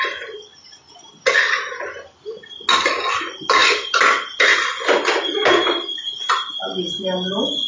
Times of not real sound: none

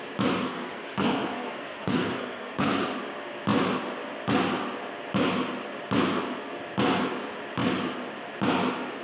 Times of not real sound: 0.5-2.8

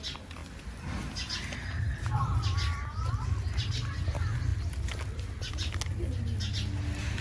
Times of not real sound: none

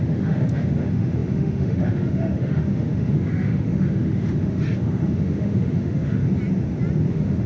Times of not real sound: 0.0-6.2; 7.1-7.5